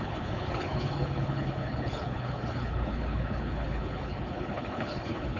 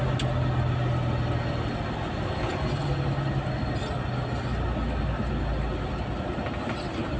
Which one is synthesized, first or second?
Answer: first